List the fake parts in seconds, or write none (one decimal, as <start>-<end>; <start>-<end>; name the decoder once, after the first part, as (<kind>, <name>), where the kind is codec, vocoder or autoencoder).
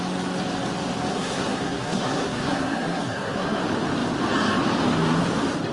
1.1-3.6 (codec, SNAC)